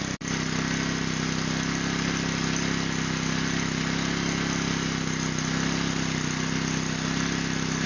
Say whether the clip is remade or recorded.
recorded